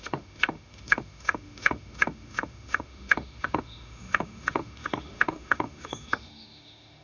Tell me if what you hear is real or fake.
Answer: fake